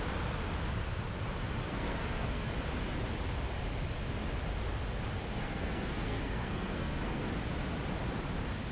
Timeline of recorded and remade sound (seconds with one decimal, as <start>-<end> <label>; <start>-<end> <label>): 0.0-1.6 recorded; 1.6-2.5 remade; 2.5-5.4 recorded; 5.4-7.3 remade; 7.3-8.7 recorded